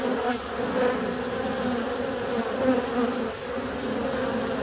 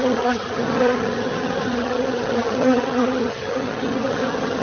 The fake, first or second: second